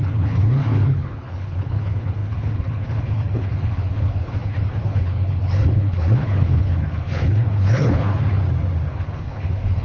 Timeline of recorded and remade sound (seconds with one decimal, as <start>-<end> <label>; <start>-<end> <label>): 0.0-8.4 remade; 8.4-8.9 recorded; 8.9-9.8 remade